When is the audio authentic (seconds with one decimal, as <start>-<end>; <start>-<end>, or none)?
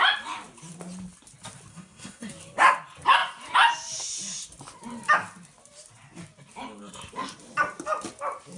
0.0-1.7; 2.3-8.6